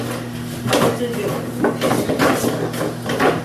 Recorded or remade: recorded